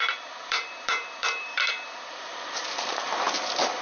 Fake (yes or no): yes